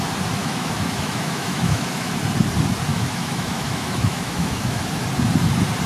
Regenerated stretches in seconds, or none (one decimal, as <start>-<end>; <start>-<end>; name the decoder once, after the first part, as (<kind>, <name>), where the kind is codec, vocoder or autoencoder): 0.4-2.2 (autoencoder, DAC-VAE); 2.9-4.8